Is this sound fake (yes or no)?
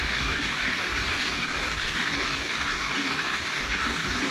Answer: yes